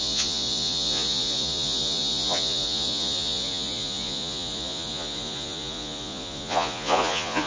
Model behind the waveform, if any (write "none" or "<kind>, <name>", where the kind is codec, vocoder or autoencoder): vocoder, Vocos